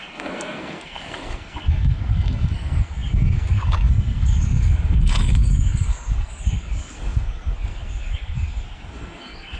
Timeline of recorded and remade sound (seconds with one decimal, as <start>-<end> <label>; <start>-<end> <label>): 0.0-9.6 remade